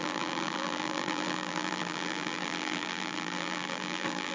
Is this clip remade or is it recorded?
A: remade